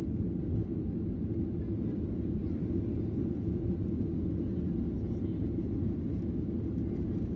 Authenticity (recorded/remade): recorded